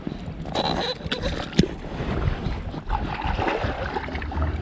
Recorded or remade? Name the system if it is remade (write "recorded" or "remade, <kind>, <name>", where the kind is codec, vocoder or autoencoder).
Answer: recorded